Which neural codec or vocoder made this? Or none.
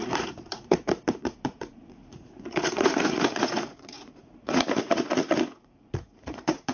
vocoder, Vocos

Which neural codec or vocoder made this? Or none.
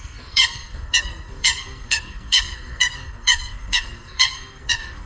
codec, SNAC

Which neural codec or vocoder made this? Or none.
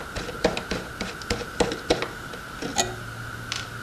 none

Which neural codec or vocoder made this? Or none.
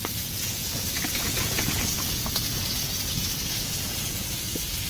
vocoder, Vocos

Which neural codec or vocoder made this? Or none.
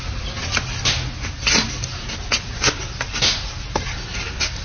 none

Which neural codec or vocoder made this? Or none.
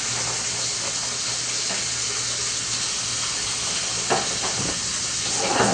none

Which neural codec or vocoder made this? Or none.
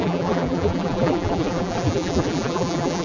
vocoder, BigVGAN v2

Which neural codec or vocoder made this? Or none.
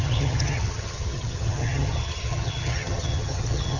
vocoder, HiFi-GAN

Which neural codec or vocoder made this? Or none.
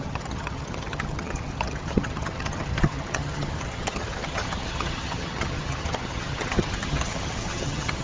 vocoder, HiFi-GAN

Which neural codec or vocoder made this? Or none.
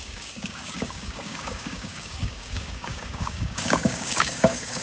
codec, DAC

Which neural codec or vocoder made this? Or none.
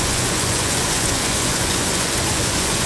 vocoder, Vocos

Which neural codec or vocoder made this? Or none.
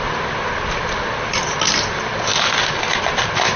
vocoder, BigVGAN v2